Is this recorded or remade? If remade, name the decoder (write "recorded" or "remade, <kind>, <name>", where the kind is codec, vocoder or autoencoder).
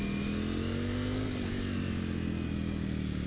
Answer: recorded